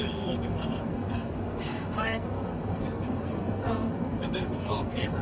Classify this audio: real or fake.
fake